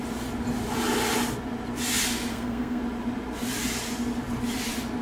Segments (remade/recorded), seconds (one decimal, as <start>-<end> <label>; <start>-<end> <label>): 0.0-2.3 recorded; 2.3-2.8 remade; 2.8-5.0 recorded